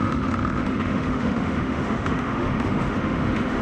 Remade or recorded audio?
remade